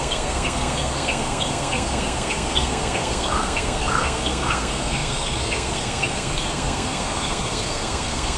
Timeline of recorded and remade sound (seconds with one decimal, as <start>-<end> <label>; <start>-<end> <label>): 0.0-8.4 remade